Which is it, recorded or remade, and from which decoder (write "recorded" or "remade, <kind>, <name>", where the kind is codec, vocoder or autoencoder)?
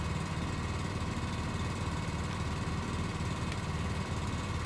recorded